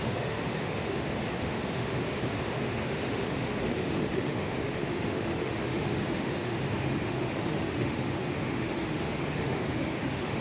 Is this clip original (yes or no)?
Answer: no